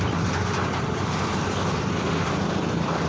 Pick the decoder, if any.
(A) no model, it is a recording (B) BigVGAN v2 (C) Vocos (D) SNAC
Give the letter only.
A